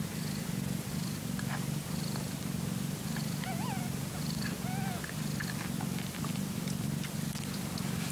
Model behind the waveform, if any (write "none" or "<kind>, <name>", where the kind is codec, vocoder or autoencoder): none